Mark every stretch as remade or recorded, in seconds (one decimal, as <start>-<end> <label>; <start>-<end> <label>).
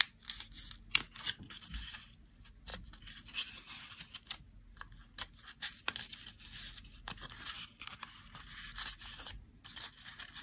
0.0-10.4 recorded